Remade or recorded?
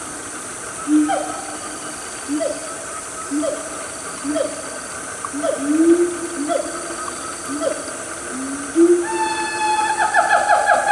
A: recorded